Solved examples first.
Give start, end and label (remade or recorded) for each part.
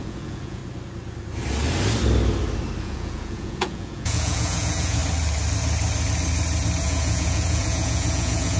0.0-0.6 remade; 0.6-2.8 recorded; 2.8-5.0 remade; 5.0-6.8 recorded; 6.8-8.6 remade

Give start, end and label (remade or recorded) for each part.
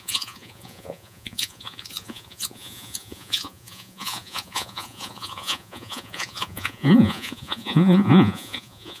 0.0-9.0 remade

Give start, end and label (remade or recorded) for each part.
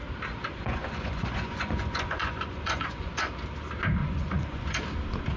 0.0-0.5 recorded; 0.5-3.3 remade; 3.3-4.0 recorded; 4.0-4.8 remade; 4.8-5.4 recorded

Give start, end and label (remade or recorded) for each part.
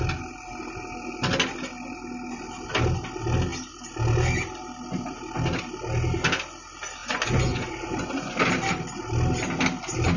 0.0-7.0 recorded; 7.0-8.4 remade; 8.4-10.2 recorded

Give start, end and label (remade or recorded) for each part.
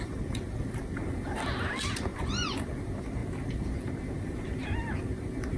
0.0-2.1 recorded; 2.1-2.6 remade; 2.6-5.6 recorded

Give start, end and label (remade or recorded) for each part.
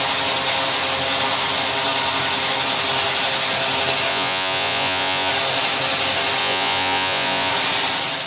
0.0-4.1 recorded; 4.1-5.3 remade; 5.3-6.4 recorded; 6.4-7.5 remade; 7.5-8.3 recorded